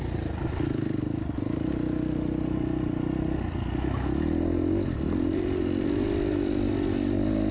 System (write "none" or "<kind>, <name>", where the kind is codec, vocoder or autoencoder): none